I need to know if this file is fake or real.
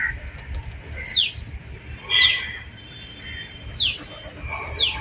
real